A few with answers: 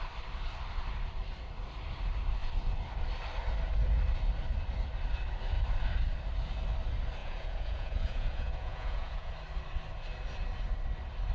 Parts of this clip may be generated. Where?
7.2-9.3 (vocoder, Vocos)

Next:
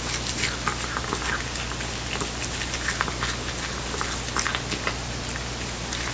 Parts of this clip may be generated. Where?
none

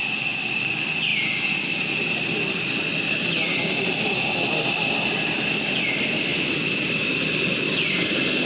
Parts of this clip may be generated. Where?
none

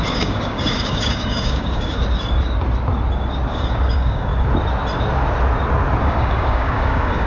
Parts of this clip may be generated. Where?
0.0-2.0 (codec, DAC); 3.5-4.3; 6.0-7.3

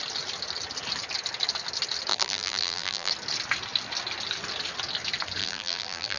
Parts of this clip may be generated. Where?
2.1-3.1 (vocoder, BigVGAN v2); 5.4-6.2

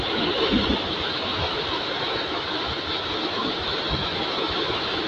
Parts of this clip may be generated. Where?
0.0-5.1 (autoencoder, DAC-VAE)